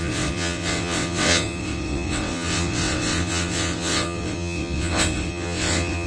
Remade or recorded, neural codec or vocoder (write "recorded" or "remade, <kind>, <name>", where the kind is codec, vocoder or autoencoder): remade, vocoder, WaveNeXt